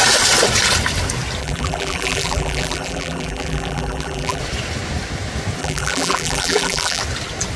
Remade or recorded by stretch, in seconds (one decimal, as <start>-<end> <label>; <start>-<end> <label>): 0.0-1.4 recorded; 1.4-4.4 remade; 4.4-5.6 recorded; 5.6-7.0 remade; 7.0-7.6 recorded